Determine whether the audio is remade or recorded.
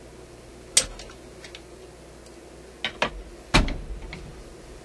recorded